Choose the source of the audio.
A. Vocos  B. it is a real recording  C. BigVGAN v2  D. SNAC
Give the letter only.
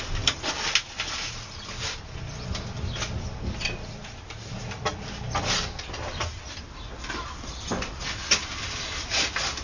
B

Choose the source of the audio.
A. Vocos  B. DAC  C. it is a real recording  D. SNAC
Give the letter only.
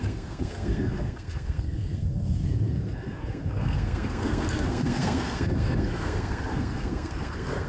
D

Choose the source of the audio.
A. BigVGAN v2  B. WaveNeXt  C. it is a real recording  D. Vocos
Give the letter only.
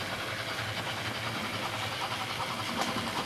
A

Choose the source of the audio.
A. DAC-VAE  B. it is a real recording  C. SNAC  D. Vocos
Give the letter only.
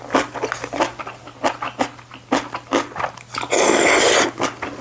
B